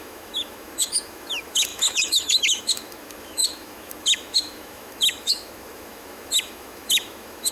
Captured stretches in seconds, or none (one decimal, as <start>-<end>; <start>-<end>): none